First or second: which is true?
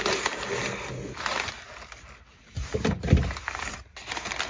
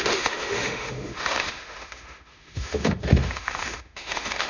first